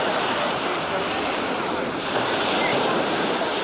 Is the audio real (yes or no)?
yes